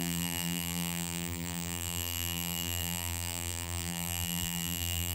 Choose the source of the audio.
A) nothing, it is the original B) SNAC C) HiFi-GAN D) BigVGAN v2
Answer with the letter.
D